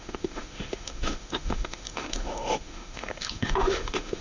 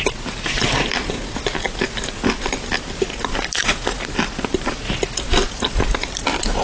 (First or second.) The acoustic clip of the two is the second